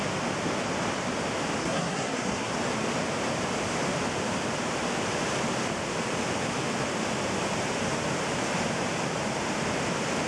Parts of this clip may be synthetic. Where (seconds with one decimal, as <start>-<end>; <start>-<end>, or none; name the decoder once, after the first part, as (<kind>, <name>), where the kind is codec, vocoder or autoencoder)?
1.6-2.5 (codec, SNAC)